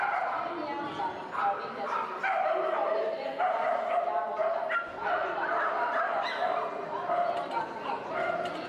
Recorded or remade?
recorded